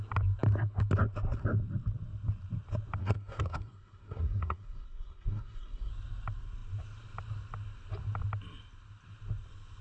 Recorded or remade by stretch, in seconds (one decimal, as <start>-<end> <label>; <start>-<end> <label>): 0.0-3.0 recorded; 3.0-5.9 remade; 5.9-9.8 recorded